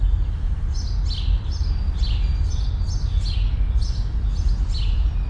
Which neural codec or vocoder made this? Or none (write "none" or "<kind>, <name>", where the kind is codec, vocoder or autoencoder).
none